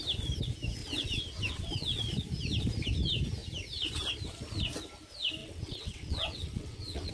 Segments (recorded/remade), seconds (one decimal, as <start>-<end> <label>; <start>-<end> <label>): 0.0-0.8 recorded; 0.8-2.0 remade; 2.0-5.4 recorded; 5.4-7.1 remade